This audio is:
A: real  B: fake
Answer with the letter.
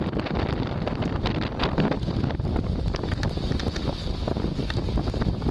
A